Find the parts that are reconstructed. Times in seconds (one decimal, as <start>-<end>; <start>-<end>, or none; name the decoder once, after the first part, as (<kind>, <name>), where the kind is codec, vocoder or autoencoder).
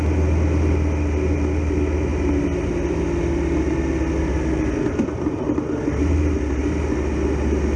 none